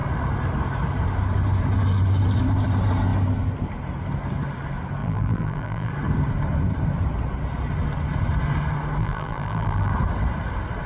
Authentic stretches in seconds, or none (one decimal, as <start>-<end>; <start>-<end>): 0.0-5.0; 5.9-9.0; 9.9-10.9